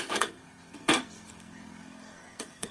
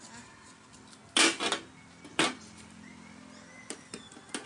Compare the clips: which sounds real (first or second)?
second